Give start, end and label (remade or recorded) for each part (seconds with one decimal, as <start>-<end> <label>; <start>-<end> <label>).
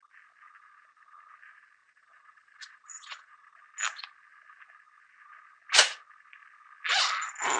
0.0-1.8 recorded; 1.8-3.6 remade; 3.6-7.6 recorded